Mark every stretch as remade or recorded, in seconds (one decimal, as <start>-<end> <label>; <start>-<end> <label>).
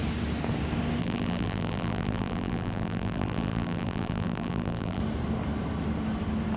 0.0-1.0 recorded; 1.0-5.0 remade; 5.0-6.6 recorded